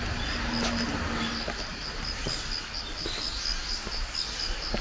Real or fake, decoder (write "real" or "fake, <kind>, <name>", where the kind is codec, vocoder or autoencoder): real